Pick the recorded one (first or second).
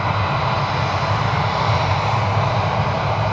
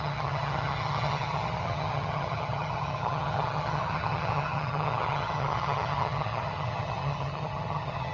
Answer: first